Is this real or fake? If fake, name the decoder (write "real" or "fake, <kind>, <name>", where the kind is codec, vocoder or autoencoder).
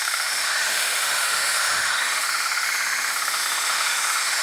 fake, autoencoder, DAC-VAE